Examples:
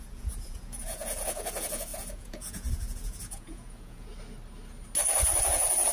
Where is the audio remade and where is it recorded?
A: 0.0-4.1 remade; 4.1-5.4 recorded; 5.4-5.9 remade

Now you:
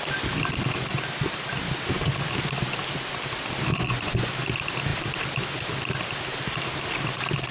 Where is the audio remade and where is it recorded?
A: 0.0-3.7 recorded; 3.7-4.3 remade; 4.3-7.5 recorded